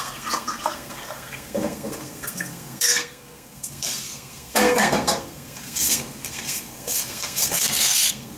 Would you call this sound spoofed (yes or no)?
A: yes